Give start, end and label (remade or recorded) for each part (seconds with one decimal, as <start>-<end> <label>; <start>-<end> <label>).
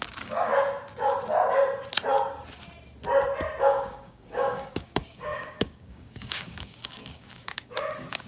0.0-0.5 remade; 0.5-3.6 recorded; 3.6-8.3 remade